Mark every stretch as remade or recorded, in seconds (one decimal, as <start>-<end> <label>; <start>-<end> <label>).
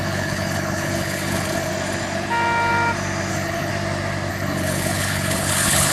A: 0.0-1.7 remade; 1.7-3.3 recorded; 3.3-3.7 remade; 3.7-4.3 recorded; 4.3-5.9 remade